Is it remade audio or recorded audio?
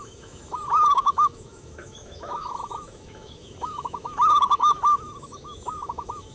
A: remade